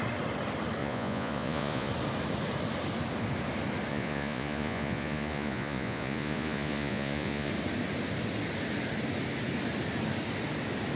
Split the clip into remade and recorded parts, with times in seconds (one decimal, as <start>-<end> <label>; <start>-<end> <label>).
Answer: 0.0-0.8 recorded; 0.8-1.9 remade; 1.9-3.9 recorded; 3.9-7.5 remade; 7.5-11.0 recorded

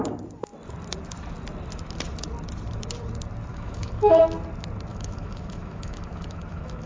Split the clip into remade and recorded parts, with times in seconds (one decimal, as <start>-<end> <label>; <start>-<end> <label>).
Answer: 0.0-3.5 recorded; 3.5-4.2 remade; 4.2-4.9 recorded; 4.9-6.9 remade

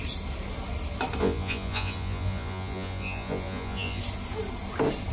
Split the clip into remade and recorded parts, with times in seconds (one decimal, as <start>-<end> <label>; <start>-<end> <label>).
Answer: 0.0-1.2 recorded; 1.2-4.0 remade; 4.0-5.1 recorded

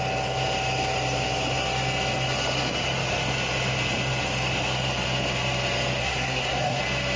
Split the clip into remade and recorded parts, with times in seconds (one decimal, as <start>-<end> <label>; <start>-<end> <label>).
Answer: 0.0-6.0 recorded; 6.0-6.8 remade; 6.8-7.2 recorded

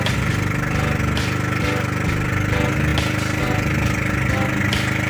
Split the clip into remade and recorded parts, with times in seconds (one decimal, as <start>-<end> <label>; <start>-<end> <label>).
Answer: 0.0-5.1 recorded

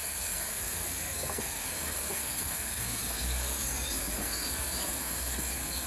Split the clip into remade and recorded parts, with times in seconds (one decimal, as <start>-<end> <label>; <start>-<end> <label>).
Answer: 0.0-5.9 remade